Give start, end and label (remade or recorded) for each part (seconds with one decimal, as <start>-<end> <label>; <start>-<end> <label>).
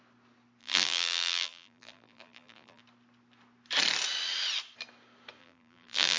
0.0-0.6 recorded; 0.6-2.8 remade; 2.8-5.4 recorded; 5.4-6.2 remade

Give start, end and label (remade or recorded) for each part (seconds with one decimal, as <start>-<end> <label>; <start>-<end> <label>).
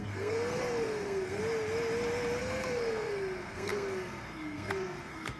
0.0-1.4 remade; 1.4-2.4 recorded; 2.4-5.4 remade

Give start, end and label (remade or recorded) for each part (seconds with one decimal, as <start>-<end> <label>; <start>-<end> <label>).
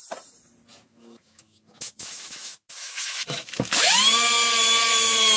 0.0-0.7 recorded; 0.7-3.9 remade; 3.9-5.4 recorded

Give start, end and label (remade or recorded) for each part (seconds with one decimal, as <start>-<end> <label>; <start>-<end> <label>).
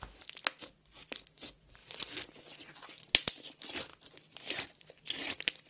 0.0-5.7 recorded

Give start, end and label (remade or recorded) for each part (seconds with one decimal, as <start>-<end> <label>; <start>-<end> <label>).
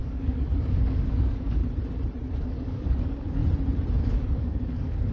0.0-1.6 remade; 1.6-2.4 recorded; 2.4-3.4 remade; 3.4-4.0 recorded; 4.0-5.1 remade